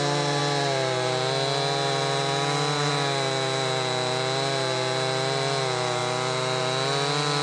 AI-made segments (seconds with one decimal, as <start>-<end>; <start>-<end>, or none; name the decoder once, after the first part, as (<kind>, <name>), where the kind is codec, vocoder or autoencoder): none